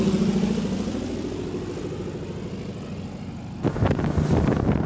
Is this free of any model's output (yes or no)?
yes